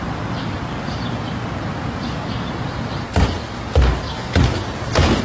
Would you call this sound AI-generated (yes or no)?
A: no